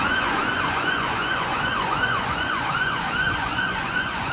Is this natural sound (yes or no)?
no